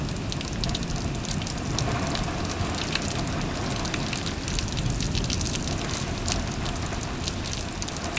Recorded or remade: recorded